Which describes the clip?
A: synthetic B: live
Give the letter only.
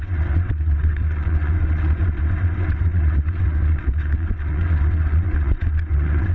A